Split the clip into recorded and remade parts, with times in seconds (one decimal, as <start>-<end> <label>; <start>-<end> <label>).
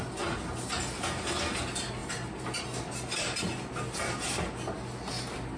0.0-5.6 recorded